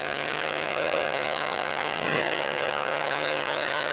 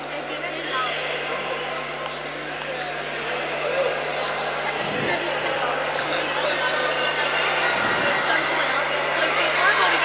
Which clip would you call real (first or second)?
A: second